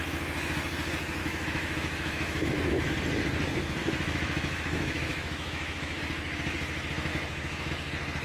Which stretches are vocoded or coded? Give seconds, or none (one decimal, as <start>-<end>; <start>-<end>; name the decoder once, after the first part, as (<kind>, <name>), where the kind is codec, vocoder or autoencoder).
1.2-2.9 (autoencoder, DAC-VAE); 3.8-6.0; 7.1-7.7